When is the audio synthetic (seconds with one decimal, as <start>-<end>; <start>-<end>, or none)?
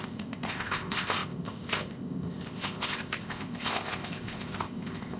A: 0.0-5.2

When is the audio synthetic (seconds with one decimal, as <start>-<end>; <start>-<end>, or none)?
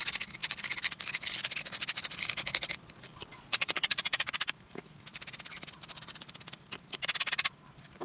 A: 3.1-4.2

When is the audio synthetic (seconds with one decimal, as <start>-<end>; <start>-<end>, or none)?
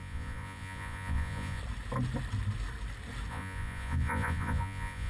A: 0.0-1.6; 3.3-5.1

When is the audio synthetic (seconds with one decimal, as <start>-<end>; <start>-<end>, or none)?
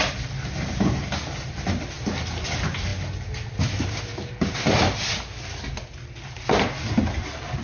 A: none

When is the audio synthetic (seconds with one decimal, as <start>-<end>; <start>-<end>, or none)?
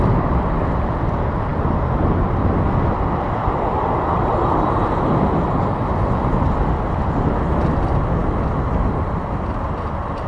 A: none